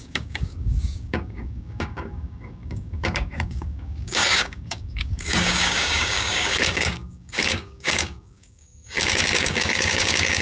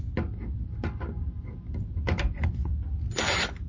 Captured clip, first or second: second